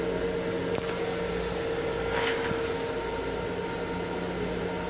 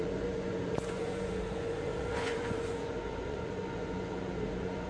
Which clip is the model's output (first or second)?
second